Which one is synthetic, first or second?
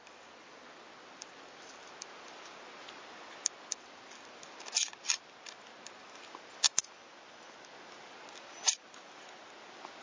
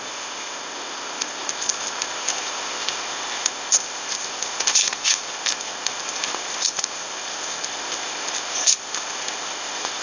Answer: second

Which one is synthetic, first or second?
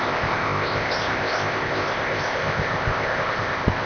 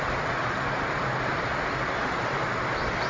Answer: first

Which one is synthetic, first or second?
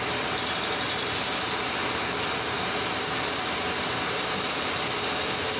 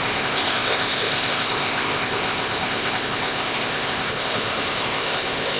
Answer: second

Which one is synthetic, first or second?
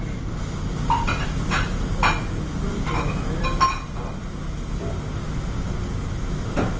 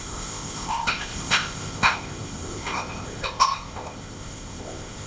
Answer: second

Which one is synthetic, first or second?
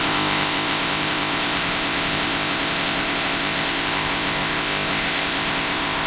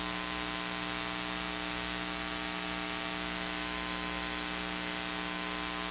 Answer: first